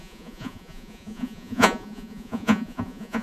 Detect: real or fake fake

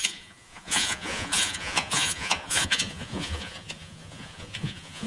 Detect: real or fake fake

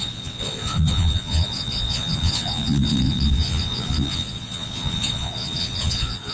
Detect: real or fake fake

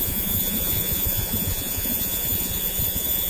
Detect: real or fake fake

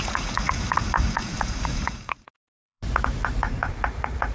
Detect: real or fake fake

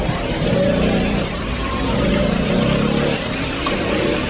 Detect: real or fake real